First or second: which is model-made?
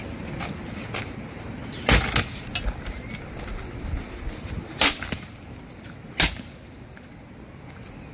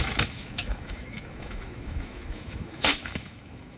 second